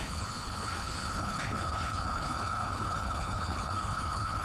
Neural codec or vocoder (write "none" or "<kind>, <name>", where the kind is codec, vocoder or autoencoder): codec, HILCodec